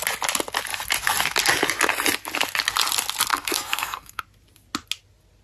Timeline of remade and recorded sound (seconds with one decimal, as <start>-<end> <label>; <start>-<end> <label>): 0.0-3.3 recorded; 3.3-4.2 remade; 4.2-5.4 recorded